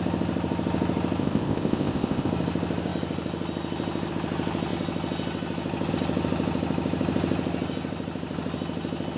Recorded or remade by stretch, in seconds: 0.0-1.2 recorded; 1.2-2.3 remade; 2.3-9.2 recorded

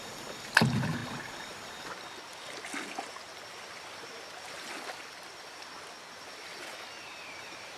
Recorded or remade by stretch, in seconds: 0.0-7.8 recorded

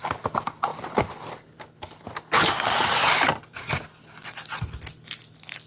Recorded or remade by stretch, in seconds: 0.0-0.7 recorded; 0.7-4.1 remade; 4.1-5.7 recorded

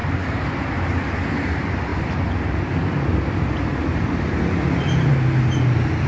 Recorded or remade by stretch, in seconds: 0.0-6.1 recorded

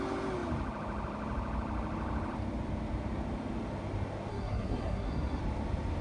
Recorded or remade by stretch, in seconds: 0.0-4.3 recorded; 4.3-5.4 remade; 5.4-6.0 recorded

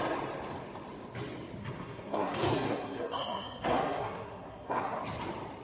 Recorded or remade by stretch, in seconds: 0.0-1.6 recorded; 1.6-5.0 remade; 5.0-5.6 recorded